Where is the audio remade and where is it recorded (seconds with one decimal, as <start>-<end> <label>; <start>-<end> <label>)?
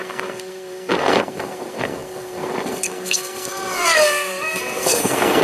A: 0.0-5.4 remade